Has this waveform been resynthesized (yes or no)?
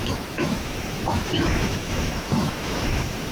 yes